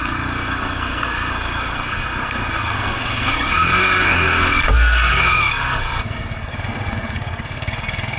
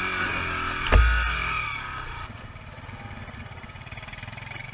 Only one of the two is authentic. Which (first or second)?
second